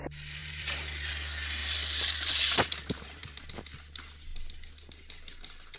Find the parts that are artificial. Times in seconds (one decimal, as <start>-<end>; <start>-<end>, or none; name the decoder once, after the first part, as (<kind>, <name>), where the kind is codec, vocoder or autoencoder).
0.4-1.1 (vocoder, BigVGAN v2); 1.6-3.4